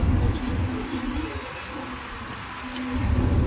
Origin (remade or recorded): recorded